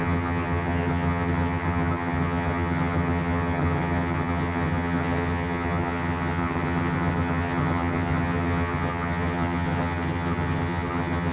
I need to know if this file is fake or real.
fake